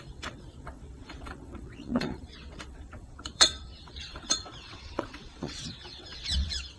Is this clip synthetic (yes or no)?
yes